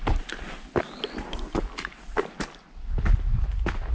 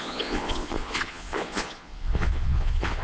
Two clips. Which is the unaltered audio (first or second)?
first